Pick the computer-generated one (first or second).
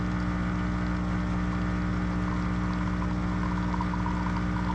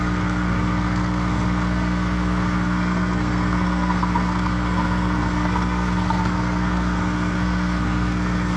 second